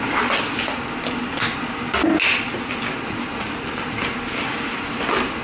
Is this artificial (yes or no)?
no